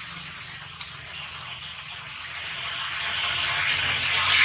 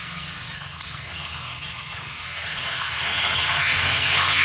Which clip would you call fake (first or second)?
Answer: second